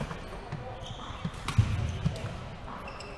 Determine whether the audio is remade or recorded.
recorded